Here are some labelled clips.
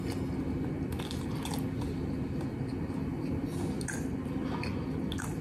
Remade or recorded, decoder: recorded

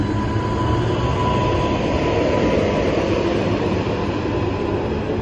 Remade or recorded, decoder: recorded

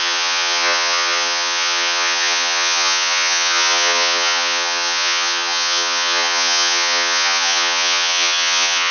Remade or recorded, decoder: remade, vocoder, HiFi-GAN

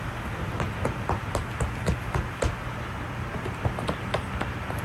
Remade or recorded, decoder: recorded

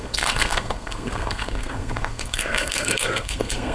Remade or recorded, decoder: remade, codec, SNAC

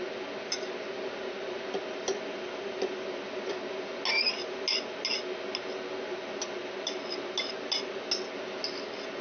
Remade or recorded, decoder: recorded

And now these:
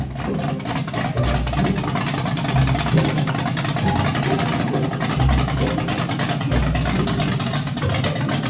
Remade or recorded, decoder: recorded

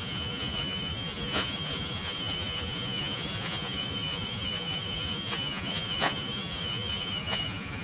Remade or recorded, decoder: remade, vocoder, Vocos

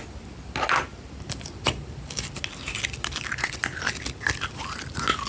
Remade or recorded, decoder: recorded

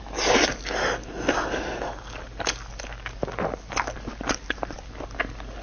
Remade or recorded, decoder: recorded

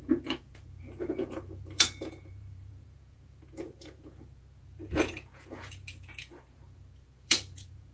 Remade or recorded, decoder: remade, vocoder, Vocos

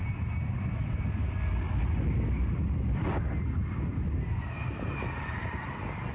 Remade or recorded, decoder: recorded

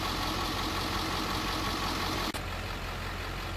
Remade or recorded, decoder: recorded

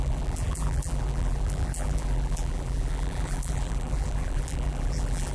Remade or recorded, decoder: remade, vocoder, BigVGAN v2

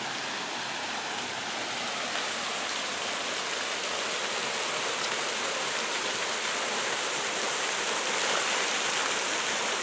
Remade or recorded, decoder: recorded